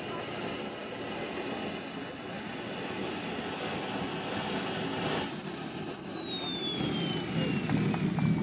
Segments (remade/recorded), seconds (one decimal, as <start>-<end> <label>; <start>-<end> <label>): 0.0-8.4 recorded